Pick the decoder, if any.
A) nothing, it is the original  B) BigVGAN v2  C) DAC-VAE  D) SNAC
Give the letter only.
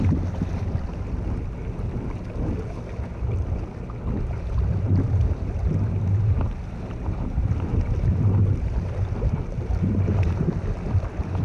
A